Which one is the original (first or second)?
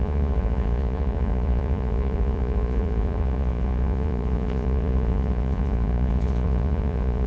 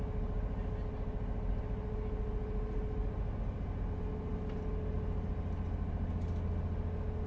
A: second